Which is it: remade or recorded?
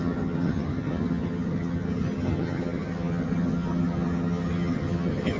remade